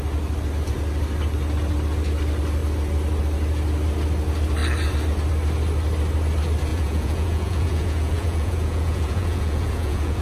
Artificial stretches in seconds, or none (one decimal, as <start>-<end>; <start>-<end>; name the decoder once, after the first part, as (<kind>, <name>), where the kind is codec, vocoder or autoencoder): 6.7-10.2 (vocoder, Vocos)